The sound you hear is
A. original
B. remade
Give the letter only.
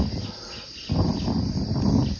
A